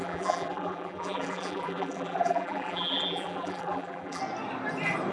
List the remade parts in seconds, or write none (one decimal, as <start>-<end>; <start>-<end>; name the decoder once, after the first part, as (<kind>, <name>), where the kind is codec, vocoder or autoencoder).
0.0-4.2 (vocoder, BigVGAN v2)